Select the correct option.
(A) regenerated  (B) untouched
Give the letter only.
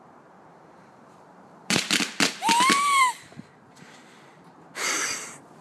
A